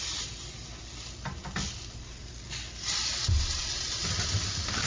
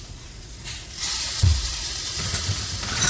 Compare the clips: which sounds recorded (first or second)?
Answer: first